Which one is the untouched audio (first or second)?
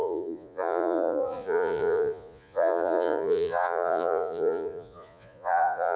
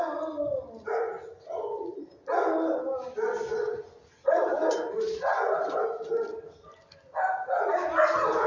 second